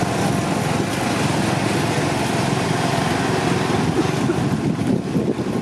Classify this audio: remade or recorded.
recorded